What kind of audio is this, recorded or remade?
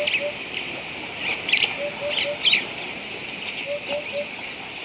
recorded